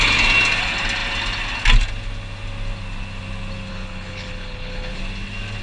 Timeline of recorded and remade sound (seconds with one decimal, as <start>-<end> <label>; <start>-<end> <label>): 0.0-3.7 recorded; 3.7-5.0 remade; 5.0-5.6 recorded